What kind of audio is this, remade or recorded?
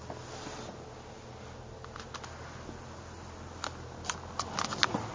recorded